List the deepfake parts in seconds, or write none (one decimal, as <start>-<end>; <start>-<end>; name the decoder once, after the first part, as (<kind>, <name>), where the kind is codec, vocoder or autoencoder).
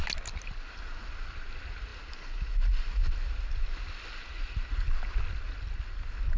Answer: none